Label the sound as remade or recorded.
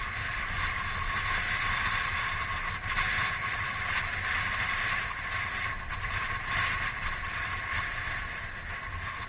recorded